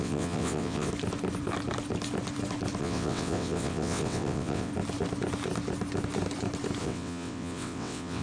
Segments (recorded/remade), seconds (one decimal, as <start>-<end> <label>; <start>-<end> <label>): 0.0-0.9 remade; 0.9-2.8 recorded; 2.8-4.7 remade; 4.7-6.8 recorded; 6.8-8.2 remade